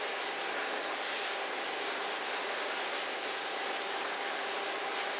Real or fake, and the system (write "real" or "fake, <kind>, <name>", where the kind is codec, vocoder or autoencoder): real